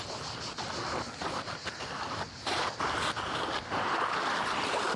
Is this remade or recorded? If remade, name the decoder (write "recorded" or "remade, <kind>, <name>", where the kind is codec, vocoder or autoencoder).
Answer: recorded